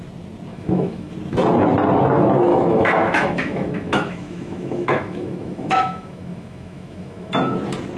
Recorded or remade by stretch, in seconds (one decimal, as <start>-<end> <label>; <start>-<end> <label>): 0.0-0.5 recorded; 0.5-1.1 remade; 1.1-2.5 recorded; 2.5-7.3 remade; 7.3-8.0 recorded